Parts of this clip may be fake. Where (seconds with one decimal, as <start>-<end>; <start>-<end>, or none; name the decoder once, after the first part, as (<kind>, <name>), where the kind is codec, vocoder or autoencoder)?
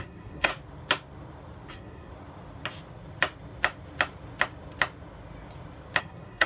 0.0-0.5 (codec, SNAC); 1.7-2.1; 6.0-6.5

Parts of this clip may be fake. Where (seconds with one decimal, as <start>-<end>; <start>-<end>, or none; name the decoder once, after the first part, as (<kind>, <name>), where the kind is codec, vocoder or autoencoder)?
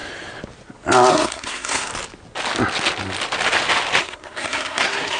1.1-1.9 (codec, SNAC); 4.0-5.2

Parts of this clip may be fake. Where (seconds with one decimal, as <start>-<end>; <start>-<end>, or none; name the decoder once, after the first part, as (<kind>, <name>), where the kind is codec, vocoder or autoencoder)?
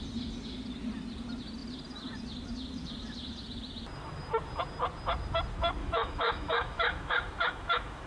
5.8-8.1 (autoencoder, DAC-VAE)